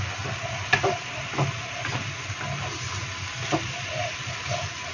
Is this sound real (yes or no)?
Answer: yes